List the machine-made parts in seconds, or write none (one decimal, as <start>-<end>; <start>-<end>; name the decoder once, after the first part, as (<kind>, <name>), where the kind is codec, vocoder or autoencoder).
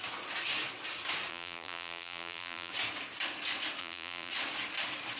1.3-2.7 (vocoder, BigVGAN v2); 3.8-4.3